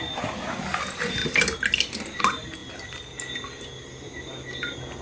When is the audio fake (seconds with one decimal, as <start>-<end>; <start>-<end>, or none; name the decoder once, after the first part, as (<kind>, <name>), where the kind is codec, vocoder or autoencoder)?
none